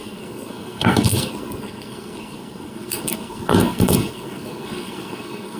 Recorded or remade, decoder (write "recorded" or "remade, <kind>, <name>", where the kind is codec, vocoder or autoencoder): remade, codec, SNAC